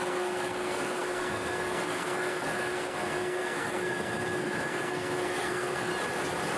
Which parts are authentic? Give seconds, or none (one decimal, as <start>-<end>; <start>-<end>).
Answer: 5.9-6.6